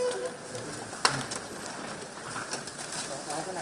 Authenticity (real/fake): real